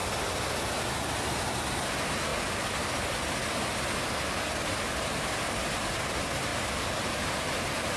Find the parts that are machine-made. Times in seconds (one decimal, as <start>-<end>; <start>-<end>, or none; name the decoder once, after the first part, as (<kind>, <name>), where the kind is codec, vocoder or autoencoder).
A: none